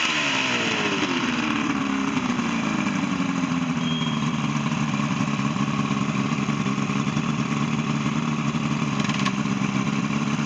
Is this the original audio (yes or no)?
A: no